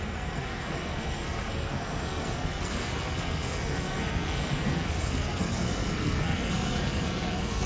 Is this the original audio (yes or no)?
no